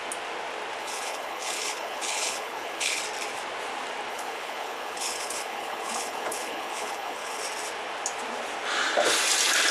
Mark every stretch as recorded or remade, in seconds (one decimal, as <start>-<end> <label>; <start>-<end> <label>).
0.0-0.8 recorded; 0.8-3.0 remade; 3.0-4.1 recorded; 4.1-7.4 remade; 7.4-9.7 recorded